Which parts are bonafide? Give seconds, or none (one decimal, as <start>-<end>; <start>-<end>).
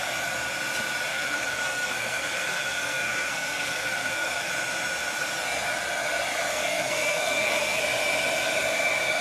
0.0-1.1; 4.5-6.5; 7.8-9.2